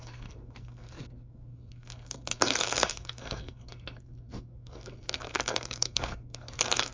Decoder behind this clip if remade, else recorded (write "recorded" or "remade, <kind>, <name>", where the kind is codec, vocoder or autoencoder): remade, codec, SNAC